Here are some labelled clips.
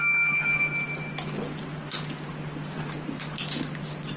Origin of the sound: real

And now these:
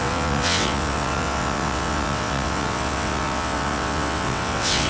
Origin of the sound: fake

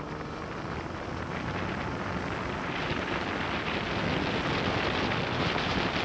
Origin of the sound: real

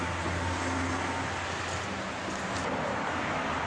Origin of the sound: real